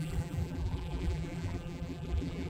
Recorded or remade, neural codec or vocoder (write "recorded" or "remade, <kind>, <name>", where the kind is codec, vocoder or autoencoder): remade, vocoder, BigVGAN v2